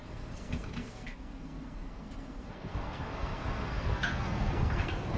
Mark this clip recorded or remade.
remade